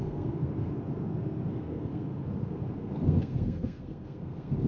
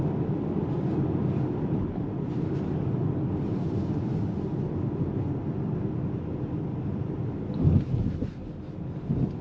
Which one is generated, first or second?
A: first